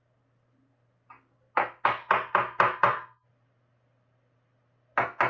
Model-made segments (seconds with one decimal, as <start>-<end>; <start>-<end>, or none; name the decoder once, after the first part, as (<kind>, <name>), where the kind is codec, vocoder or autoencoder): none